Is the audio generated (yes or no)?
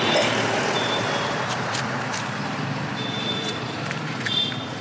yes